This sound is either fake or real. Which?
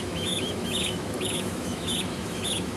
fake